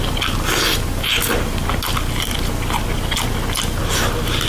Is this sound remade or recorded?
recorded